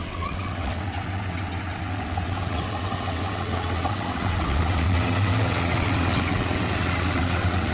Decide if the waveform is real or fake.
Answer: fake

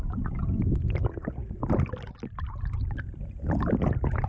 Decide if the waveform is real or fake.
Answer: real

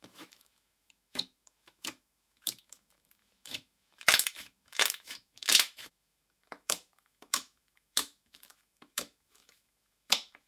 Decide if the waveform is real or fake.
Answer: fake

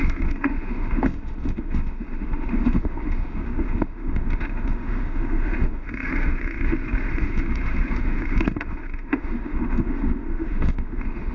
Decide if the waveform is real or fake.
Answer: fake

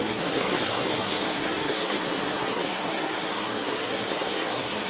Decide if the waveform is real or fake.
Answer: fake